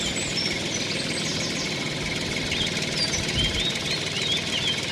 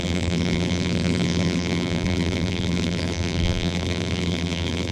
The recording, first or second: first